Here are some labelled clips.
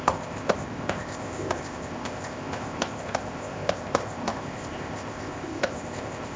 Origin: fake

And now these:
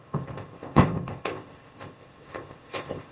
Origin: fake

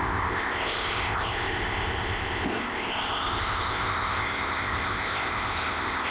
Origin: fake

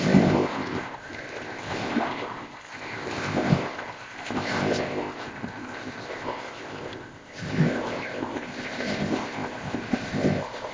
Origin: fake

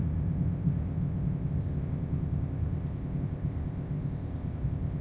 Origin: fake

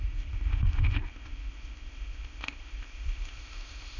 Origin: fake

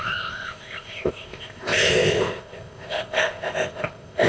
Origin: fake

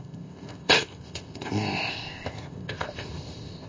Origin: fake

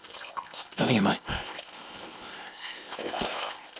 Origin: fake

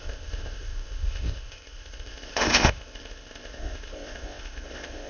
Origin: fake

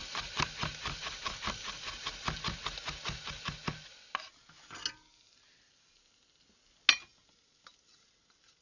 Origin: real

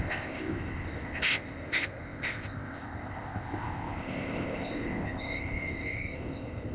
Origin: fake